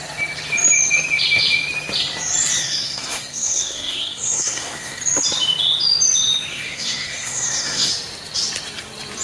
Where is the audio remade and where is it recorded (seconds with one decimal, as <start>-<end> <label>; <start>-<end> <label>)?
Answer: 0.0-2.6 recorded; 2.6-5.0 remade; 5.0-6.5 recorded; 6.5-7.9 remade; 7.9-9.2 recorded